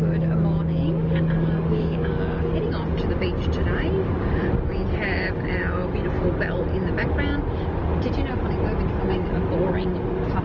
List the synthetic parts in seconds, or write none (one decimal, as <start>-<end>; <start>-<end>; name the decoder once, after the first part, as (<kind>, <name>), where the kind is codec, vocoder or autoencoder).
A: 0.8-2.1 (codec, DAC)